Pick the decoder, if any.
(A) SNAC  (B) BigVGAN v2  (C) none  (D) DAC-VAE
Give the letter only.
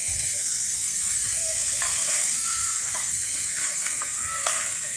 A